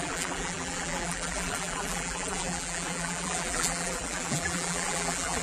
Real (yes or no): no